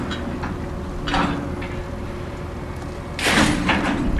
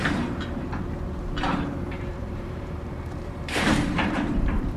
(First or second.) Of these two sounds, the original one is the first